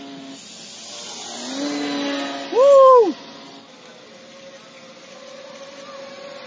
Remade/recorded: recorded